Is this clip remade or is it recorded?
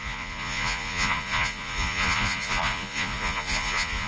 remade